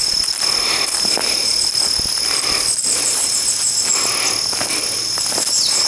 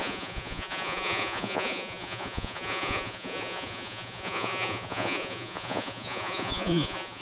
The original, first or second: first